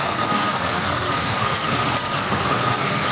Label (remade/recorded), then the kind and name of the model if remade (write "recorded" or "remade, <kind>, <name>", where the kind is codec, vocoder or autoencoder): remade, codec, SNAC